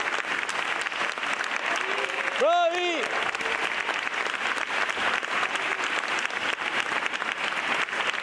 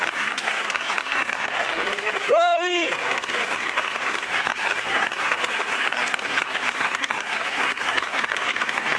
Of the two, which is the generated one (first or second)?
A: second